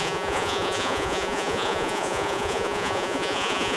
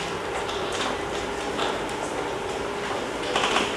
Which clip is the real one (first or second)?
second